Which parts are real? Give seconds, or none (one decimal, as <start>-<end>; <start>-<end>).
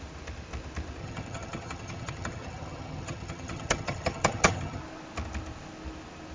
0.0-1.0; 4.8-6.3